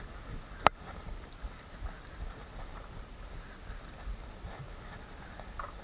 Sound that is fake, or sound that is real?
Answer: real